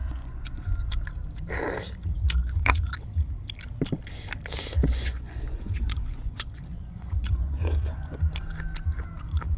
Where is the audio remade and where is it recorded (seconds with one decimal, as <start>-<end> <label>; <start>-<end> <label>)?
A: 0.0-1.0 remade; 1.0-2.4 recorded; 2.4-2.9 remade; 2.9-4.8 recorded; 4.8-8.2 remade; 8.2-9.6 recorded